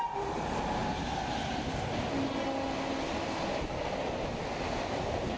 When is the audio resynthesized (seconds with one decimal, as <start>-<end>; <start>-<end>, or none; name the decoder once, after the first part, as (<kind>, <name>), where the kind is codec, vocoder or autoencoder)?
none